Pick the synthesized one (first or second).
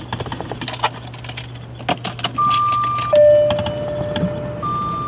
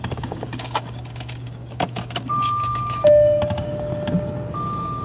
second